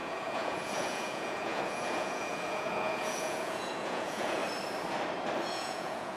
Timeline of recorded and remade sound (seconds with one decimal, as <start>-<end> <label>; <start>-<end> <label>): 0.0-4.4 remade; 4.4-5.5 recorded; 5.5-6.2 remade